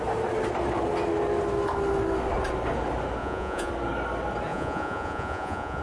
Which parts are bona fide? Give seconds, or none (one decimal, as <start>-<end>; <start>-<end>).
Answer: 0.0-3.2; 3.7-4.5